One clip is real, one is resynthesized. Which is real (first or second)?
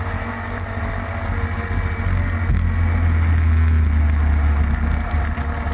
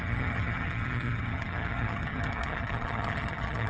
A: first